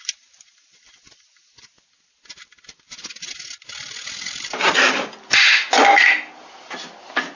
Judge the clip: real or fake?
real